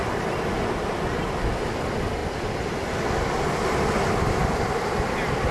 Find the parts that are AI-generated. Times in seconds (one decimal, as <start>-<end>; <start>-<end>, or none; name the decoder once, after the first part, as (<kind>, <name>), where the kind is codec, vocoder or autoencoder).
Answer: none